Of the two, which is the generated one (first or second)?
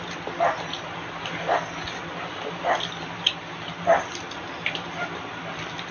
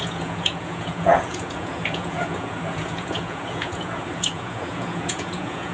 second